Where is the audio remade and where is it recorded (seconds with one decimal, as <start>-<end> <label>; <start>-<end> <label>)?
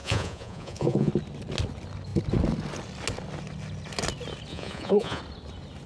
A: 0.0-1.1 remade; 1.1-4.5 recorded; 4.5-5.2 remade; 5.2-5.9 recorded